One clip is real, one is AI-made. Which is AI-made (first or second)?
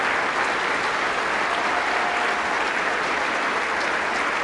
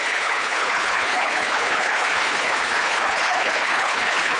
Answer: second